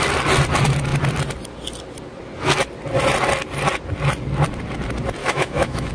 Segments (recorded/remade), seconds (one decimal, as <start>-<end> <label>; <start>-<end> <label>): 0.0-5.2 recorded; 5.2-5.9 remade

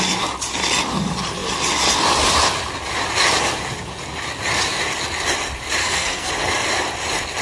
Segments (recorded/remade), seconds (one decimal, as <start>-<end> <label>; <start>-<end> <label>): 0.0-5.8 recorded; 5.8-6.3 remade; 6.3-7.4 recorded

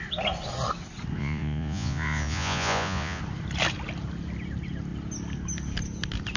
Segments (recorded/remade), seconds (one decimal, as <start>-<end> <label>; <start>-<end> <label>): 0.0-1.2 recorded; 1.2-3.2 remade; 3.2-6.4 recorded

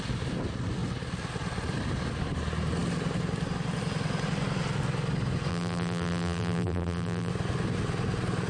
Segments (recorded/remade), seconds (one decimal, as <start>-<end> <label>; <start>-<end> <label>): 0.0-5.5 recorded; 5.5-7.3 remade; 7.3-8.5 recorded

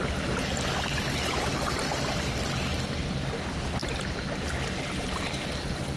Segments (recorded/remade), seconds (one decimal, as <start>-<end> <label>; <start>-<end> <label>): 0.0-6.0 recorded

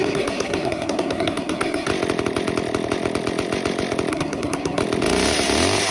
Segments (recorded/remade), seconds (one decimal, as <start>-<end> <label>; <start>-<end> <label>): 0.0-1.9 remade; 1.9-4.1 recorded; 4.1-4.8 remade; 4.8-5.9 recorded

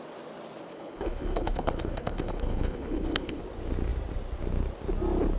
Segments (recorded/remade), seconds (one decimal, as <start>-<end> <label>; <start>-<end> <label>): 0.0-0.7 recorded; 0.7-3.4 remade; 3.4-5.4 recorded